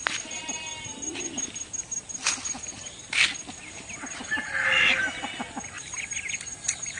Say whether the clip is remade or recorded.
recorded